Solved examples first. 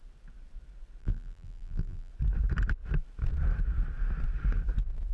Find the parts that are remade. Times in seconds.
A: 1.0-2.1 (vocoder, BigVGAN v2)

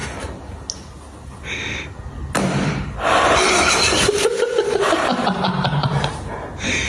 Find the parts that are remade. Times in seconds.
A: 2.3-6.9 (vocoder, BigVGAN v2)

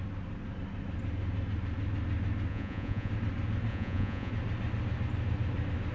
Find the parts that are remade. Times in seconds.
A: 2.5-3.1 (vocoder, Vocos); 3.7-4.3

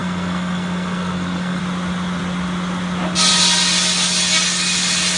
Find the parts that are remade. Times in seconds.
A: 0.0-1.6 (codec, SNAC)

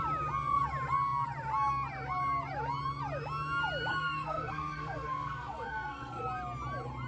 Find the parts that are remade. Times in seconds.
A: 3.9-6.2 (codec, SNAC)

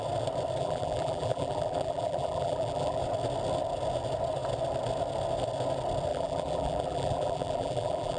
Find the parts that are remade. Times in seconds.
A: 0.6-3.0 (vocoder, BigVGAN v2); 6.1-8.2

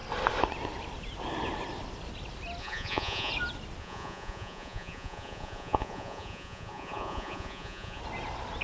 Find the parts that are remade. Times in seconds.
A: 2.6-3.3 (vocoder, Vocos); 3.8-8.0

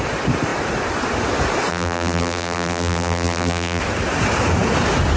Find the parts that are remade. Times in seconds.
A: 1.7-3.8 (vocoder, BigVGAN v2)